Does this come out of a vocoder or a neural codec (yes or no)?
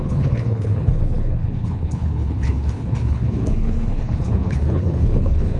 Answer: yes